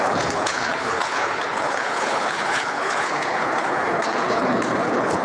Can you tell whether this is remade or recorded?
remade